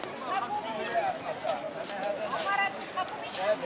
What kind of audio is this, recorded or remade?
recorded